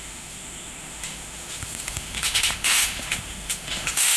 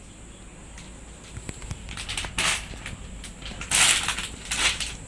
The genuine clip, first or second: second